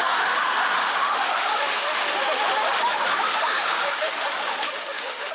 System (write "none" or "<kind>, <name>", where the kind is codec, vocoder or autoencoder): autoencoder, DAC-VAE